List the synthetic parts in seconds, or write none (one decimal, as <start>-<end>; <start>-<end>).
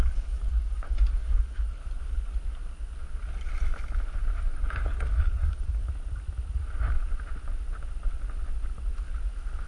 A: 0.0-1.8; 4.4-5.8